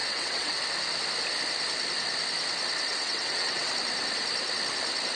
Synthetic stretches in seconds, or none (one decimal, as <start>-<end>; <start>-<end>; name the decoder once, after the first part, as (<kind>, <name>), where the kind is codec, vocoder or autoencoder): 0.0-0.6 (vocoder, WaveNeXt); 2.9-3.7